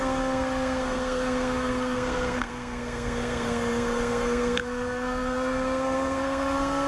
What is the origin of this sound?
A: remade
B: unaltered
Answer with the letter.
A